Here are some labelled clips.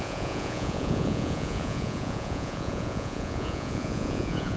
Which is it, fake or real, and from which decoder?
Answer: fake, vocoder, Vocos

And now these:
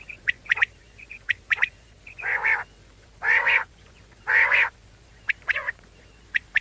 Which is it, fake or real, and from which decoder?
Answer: fake, vocoder, Vocos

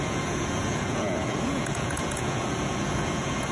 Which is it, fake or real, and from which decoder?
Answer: fake, vocoder, Vocos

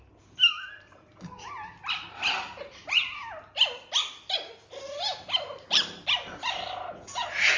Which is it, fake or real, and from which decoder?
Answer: real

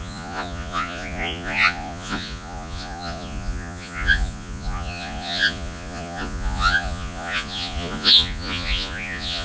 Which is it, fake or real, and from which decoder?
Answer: fake, vocoder, Vocos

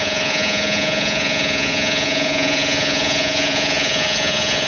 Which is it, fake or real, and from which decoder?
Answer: fake, vocoder, Vocos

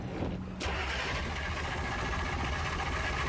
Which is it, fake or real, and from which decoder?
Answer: real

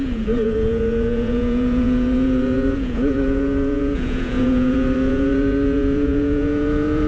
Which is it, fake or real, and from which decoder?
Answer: fake, vocoder, Vocos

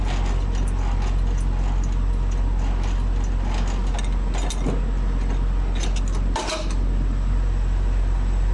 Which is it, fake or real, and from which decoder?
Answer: real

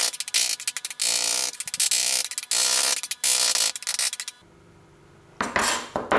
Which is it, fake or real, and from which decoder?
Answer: real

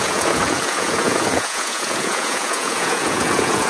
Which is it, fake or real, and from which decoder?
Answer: fake, vocoder, Vocos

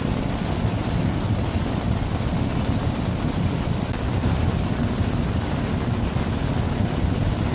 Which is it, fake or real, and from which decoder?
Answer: real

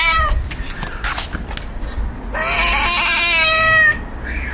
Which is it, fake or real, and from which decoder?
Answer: real